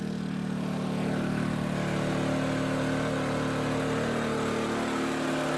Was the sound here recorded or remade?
recorded